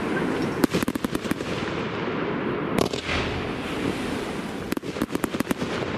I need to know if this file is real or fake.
real